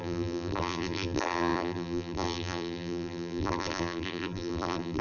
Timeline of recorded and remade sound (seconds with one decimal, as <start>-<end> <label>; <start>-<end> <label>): 0.0-5.0 remade